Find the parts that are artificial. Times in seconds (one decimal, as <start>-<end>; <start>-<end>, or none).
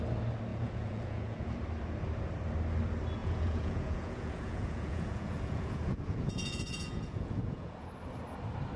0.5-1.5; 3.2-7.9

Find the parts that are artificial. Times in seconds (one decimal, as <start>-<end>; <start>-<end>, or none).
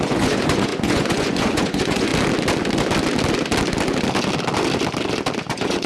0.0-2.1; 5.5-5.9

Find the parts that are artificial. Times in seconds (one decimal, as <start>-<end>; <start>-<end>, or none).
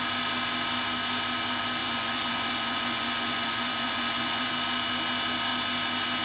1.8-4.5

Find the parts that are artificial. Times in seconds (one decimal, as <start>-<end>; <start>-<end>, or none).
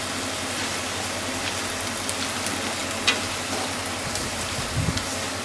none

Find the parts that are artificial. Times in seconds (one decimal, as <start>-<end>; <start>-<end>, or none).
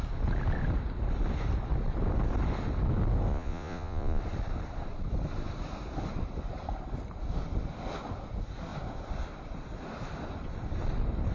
3.3-4.2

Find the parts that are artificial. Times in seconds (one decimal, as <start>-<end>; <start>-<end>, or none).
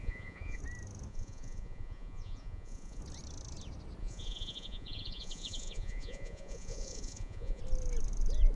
0.0-0.6; 1.1-3.0; 4.0-7.6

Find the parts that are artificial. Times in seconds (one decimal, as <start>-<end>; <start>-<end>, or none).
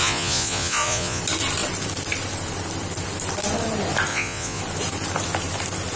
0.0-1.2; 4.1-4.6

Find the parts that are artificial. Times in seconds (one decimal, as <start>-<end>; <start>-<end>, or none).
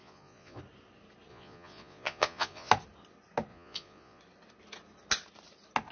0.0-0.6; 1.3-2.7; 3.5-4.2